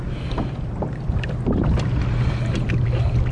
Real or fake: real